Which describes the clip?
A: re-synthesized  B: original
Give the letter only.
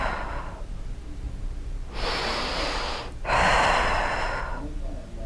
B